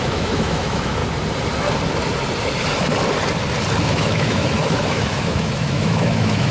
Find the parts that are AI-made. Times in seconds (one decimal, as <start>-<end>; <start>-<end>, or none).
0.0-1.0; 3.8-6.5